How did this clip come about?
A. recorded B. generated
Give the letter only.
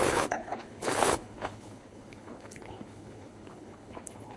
B